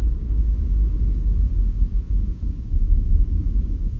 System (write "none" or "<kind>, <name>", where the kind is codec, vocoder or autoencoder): codec, DAC